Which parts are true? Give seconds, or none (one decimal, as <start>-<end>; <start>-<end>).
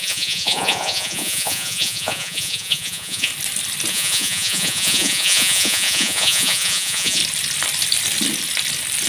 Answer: 3.3-3.9; 7.2-9.1